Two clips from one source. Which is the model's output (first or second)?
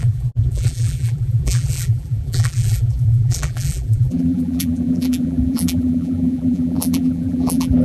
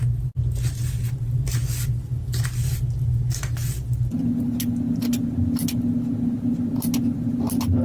first